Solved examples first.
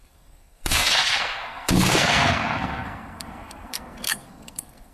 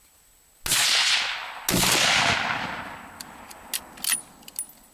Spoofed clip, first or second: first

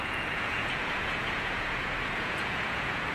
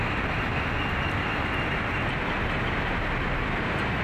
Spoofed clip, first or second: first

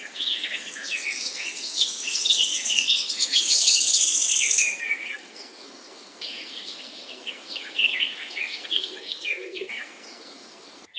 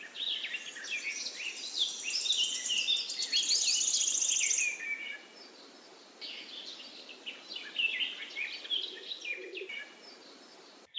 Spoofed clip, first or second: first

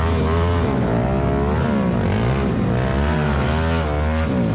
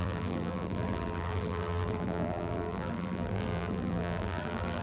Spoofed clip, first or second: second